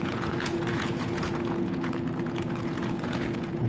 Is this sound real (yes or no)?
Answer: no